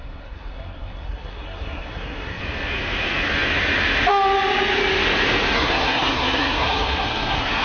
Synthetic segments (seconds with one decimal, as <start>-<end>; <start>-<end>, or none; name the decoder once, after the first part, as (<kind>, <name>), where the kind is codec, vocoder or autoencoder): 0.0-2.4 (codec, SNAC); 5.5-7.6